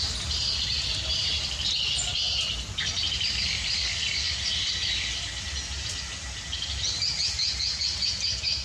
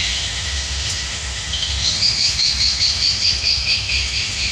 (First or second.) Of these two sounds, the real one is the first